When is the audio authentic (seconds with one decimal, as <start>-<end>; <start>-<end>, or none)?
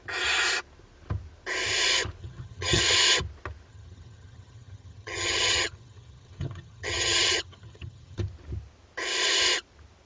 0.0-2.2; 2.8-3.7; 8.2-10.1